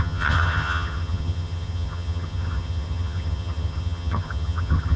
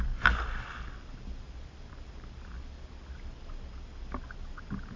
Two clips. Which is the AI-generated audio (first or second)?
first